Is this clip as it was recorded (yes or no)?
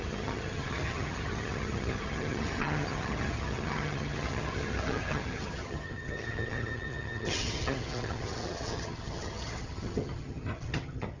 no